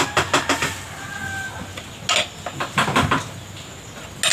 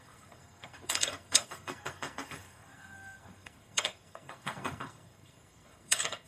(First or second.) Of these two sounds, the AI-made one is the second